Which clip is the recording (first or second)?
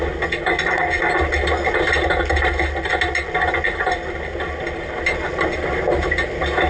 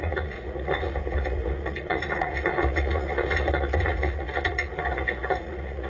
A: first